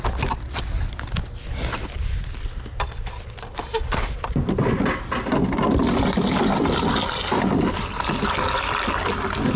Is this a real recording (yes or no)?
yes